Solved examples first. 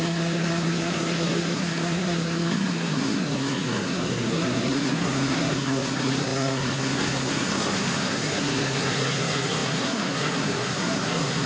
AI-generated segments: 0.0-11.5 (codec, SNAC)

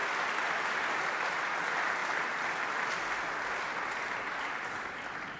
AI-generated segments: none

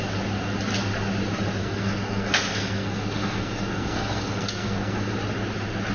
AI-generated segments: 1.6-5.1 (codec, SNAC)

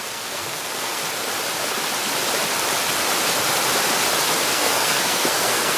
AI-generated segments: 0.0-1.0 (codec, SNAC); 4.5-5.8

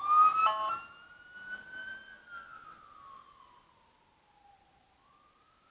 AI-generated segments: none

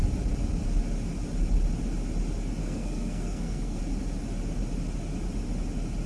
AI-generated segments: 2.6-3.8 (codec, SNAC)

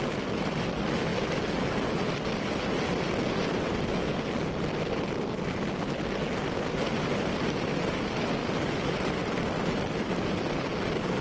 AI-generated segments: none

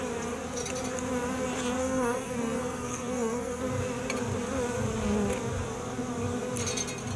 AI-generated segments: 1.8-3.6 (codec, SNAC)